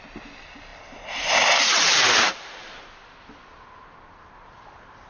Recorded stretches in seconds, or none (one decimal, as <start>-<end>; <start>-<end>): 0.0-5.1